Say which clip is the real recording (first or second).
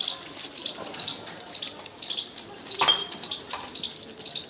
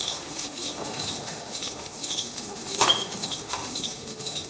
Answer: first